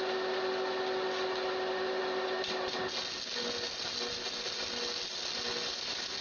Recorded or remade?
recorded